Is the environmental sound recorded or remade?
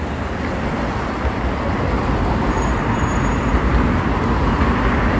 recorded